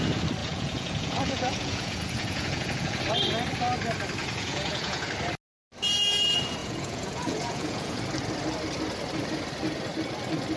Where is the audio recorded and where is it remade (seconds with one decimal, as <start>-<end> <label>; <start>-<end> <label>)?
0.0-0.4 recorded; 0.4-3.0 remade; 3.0-4.2 recorded; 4.2-5.1 remade; 5.1-6.6 recorded; 6.6-8.0 remade; 8.0-10.6 recorded